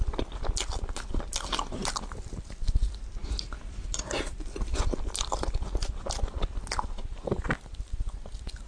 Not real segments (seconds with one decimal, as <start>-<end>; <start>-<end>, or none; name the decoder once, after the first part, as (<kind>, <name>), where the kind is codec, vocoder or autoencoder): none